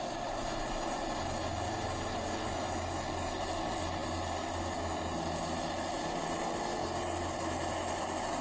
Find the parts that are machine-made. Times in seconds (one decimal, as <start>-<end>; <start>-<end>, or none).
none